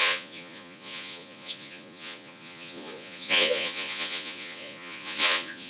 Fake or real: fake